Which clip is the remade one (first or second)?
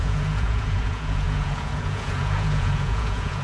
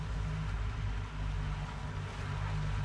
first